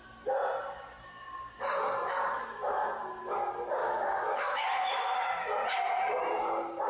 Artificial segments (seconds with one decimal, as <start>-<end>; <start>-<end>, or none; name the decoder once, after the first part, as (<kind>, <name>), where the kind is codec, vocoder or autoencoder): 3.8-5.3 (autoencoder, DAC-VAE)